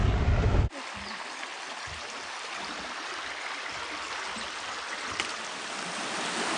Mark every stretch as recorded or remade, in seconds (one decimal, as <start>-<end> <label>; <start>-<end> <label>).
0.0-6.6 recorded